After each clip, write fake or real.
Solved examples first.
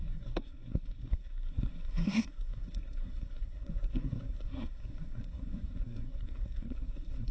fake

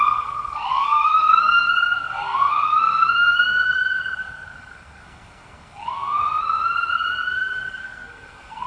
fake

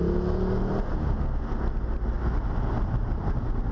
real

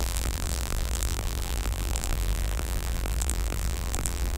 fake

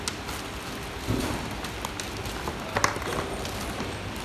real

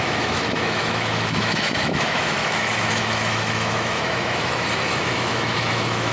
fake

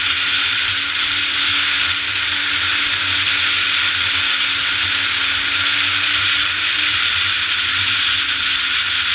real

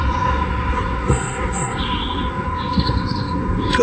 fake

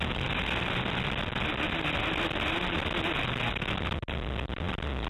real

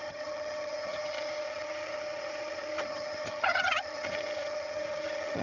fake